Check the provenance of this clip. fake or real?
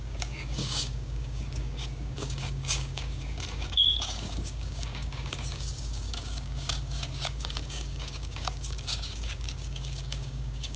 fake